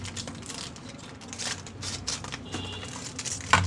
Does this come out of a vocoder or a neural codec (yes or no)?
no